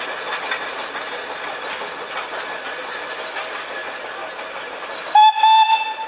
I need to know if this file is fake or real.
real